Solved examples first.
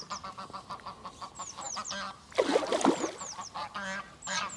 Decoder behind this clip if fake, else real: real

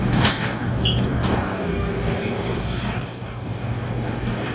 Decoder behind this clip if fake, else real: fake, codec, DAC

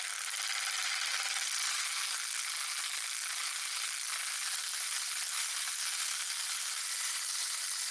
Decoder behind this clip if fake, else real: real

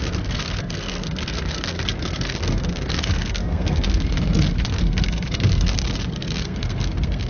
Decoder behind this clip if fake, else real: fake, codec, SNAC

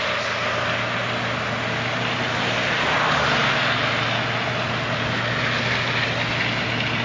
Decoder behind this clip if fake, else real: real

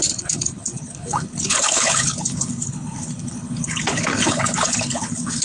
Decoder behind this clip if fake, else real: fake, codec, HILCodec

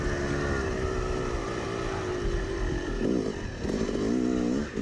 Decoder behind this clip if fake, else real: real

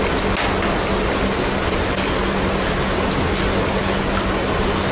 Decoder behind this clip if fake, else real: real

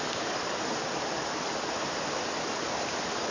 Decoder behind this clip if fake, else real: real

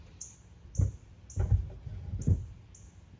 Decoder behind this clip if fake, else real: real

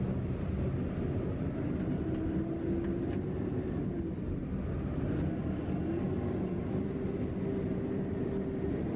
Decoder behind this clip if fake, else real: real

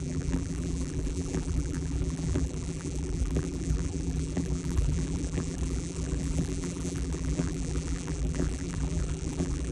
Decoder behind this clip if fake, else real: fake, vocoder, BigVGAN v2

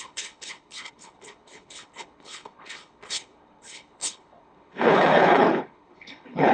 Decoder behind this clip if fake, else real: fake, codec, HILCodec